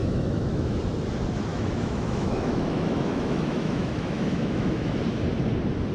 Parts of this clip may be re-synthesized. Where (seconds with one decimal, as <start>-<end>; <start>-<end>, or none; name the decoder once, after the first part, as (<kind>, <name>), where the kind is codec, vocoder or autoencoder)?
0.0-0.8 (autoencoder, DAC-VAE); 1.5-5.0